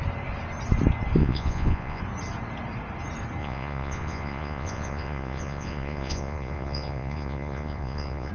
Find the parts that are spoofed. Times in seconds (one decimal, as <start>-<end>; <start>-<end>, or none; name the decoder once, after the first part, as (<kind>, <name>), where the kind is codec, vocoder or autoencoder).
1.2-2.0 (vocoder, Vocos); 3.4-8.3